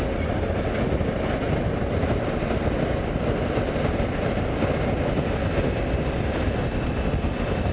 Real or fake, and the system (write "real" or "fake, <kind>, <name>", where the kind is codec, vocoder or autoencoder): real